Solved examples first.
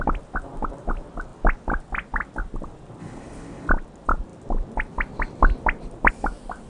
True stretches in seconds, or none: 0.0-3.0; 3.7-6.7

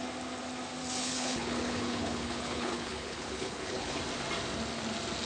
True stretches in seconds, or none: 0.0-1.0; 4.0-5.2